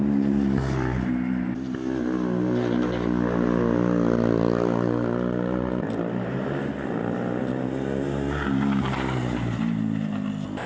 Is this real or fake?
real